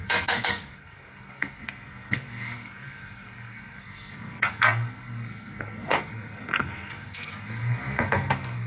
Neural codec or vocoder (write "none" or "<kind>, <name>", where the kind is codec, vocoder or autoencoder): codec, SNAC